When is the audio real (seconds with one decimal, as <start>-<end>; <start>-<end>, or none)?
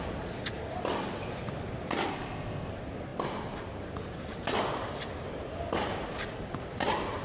0.0-2.1; 2.7-7.2